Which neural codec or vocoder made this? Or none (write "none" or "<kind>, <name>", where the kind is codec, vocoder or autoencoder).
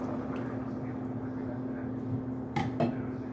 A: none